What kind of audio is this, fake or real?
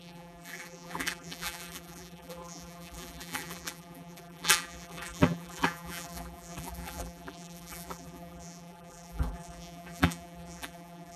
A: fake